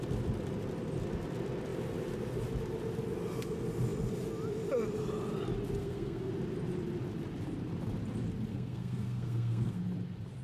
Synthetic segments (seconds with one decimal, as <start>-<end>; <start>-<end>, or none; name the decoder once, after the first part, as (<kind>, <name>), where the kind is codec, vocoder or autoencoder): 5.8-6.3 (codec, SNAC); 8.5-9.8